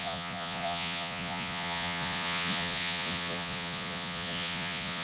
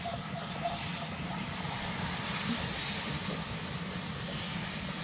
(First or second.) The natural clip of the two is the second